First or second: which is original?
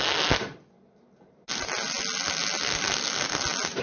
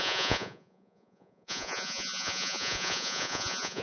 first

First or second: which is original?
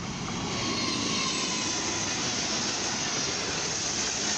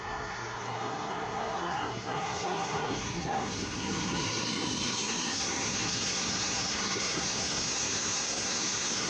first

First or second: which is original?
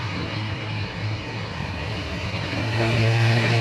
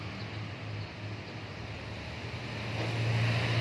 second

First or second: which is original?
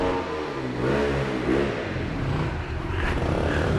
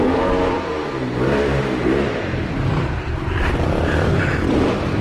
first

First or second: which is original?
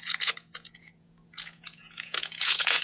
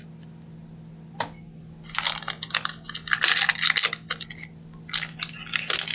second